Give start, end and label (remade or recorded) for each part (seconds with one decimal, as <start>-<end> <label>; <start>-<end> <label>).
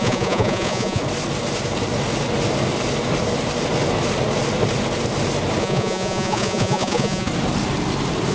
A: 0.0-1.0 remade; 1.0-5.6 recorded; 5.6-7.3 remade; 7.3-8.3 recorded